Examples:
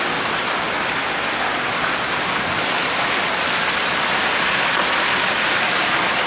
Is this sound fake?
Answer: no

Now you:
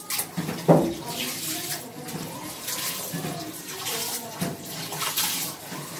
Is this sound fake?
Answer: no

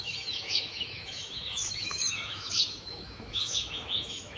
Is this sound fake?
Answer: yes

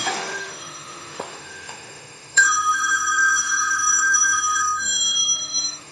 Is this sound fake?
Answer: yes